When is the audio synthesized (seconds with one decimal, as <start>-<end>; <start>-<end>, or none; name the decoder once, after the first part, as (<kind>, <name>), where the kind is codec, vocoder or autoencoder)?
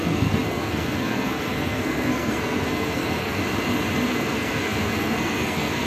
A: 0.0-3.4 (codec, SNAC); 4.1-5.9